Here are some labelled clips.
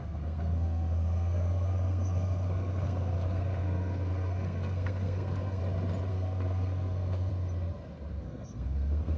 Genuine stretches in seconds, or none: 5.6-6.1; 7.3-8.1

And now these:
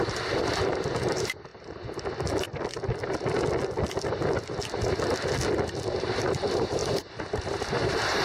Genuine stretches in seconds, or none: 1.5-6.0

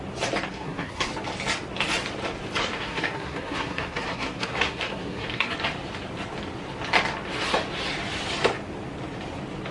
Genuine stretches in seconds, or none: 0.0-0.5; 1.1-2.6; 5.5-9.7

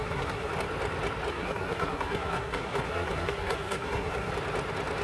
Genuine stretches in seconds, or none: 0.5-1.3; 4.3-5.0

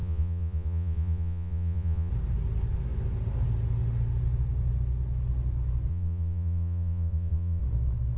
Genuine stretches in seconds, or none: 2.1-5.9; 7.6-8.2